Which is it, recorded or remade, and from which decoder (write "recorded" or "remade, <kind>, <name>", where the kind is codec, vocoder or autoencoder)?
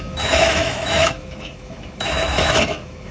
remade, autoencoder, DAC-VAE